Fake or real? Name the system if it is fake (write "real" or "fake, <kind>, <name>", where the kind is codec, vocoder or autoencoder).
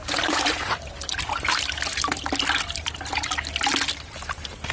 real